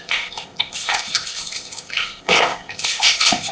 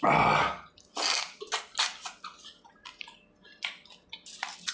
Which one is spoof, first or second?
first